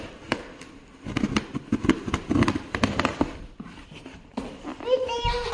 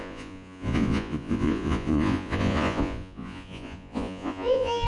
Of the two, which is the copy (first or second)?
second